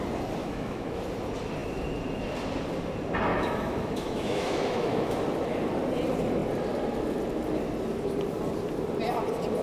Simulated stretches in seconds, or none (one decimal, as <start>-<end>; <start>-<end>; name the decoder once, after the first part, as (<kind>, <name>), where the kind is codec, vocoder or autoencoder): 0.4-1.0 (autoencoder, DAC-VAE); 3.3-5.2